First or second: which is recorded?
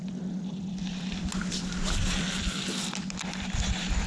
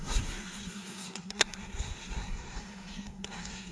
first